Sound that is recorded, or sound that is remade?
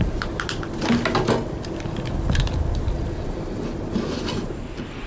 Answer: recorded